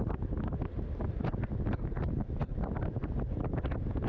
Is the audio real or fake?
real